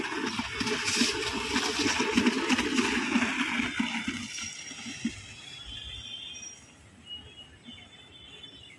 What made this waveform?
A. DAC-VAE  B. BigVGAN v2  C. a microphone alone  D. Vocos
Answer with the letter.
C